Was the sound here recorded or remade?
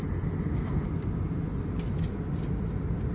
recorded